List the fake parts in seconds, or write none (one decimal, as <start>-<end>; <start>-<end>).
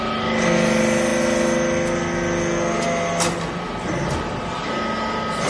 none